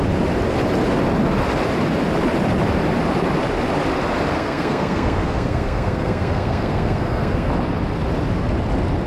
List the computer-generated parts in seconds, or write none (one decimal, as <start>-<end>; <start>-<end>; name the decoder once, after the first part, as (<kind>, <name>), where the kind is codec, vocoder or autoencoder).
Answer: 4.3-7.5 (codec, SNAC)